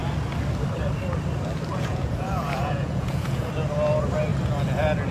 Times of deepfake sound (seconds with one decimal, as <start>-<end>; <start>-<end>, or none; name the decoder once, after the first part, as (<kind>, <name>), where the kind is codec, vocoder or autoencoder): 1.7-3.5 (vocoder, Vocos)